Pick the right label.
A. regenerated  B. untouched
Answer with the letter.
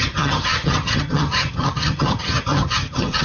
A